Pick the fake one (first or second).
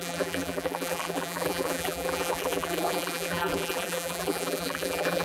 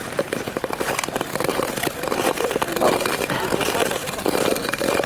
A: first